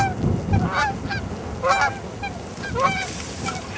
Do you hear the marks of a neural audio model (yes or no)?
no